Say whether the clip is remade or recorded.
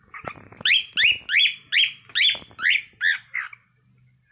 recorded